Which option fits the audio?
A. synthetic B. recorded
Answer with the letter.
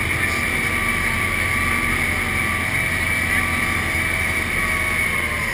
B